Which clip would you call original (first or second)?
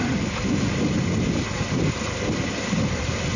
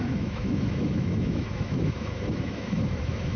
first